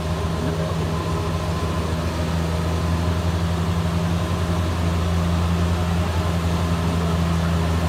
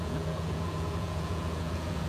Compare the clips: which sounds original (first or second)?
first